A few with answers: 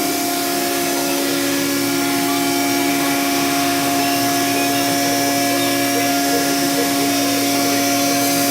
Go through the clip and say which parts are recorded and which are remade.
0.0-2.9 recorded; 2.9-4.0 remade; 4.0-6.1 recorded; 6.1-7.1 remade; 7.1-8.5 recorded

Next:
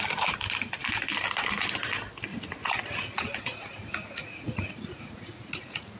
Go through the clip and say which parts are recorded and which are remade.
0.0-2.3 recorded; 2.3-6.0 remade

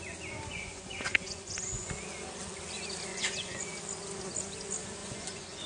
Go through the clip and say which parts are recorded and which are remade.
0.0-0.5 recorded; 0.5-1.9 remade; 1.9-3.1 recorded; 3.1-3.6 remade; 3.6-5.0 recorded; 5.0-5.7 remade